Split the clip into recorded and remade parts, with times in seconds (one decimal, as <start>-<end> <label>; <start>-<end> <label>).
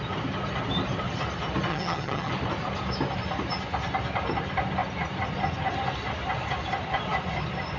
0.0-1.7 recorded; 1.7-2.3 remade; 2.3-7.8 recorded